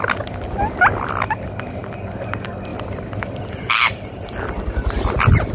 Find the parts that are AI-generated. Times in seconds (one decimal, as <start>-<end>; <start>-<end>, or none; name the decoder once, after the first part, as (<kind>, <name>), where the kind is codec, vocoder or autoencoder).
2.7-5.5 (vocoder, BigVGAN v2)